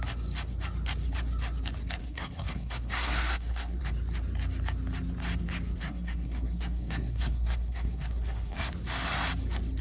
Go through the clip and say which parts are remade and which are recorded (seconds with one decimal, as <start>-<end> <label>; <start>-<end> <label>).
0.0-2.0 recorded; 2.0-3.8 remade; 3.8-5.8 recorded; 5.8-8.7 remade; 8.7-9.8 recorded